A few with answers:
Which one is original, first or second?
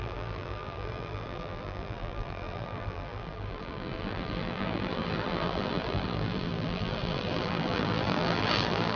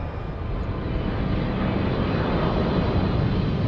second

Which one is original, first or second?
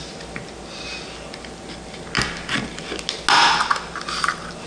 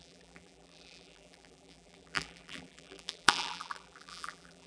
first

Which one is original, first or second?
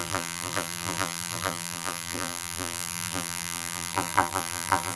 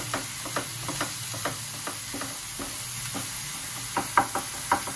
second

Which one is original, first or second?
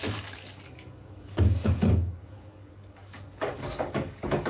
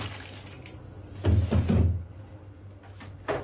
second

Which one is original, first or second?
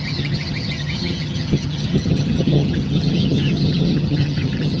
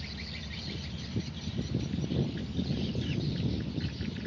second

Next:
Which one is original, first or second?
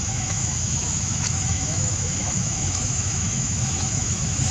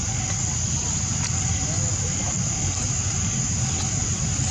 second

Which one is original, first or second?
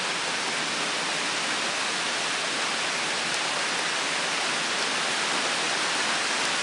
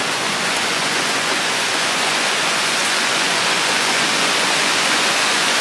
first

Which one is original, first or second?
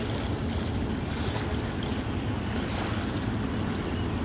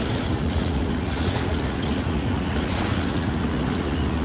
first